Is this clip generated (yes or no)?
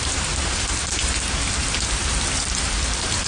no